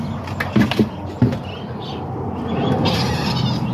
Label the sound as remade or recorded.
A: recorded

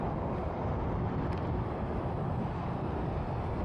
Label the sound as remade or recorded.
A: recorded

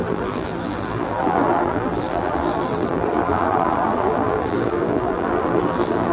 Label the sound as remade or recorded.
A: remade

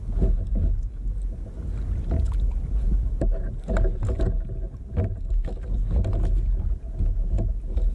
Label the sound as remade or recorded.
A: recorded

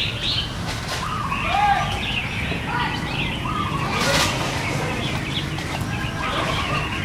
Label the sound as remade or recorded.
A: recorded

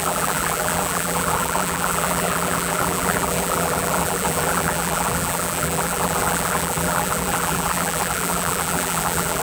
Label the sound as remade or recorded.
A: remade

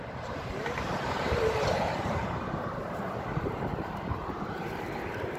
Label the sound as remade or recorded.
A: remade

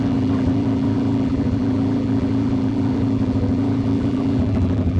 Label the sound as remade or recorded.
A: remade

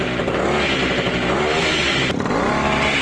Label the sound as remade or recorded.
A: recorded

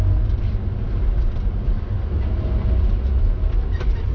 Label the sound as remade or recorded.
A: remade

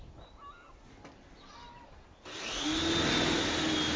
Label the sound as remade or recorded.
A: recorded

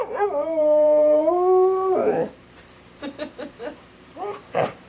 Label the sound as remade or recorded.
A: remade